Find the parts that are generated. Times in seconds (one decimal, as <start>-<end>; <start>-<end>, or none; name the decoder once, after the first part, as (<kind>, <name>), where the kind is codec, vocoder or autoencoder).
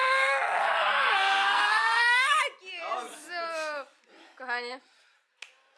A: 0.0-2.4 (codec, SNAC)